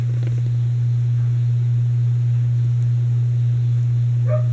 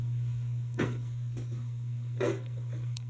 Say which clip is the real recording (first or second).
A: first